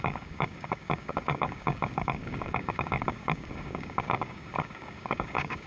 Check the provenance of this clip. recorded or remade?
remade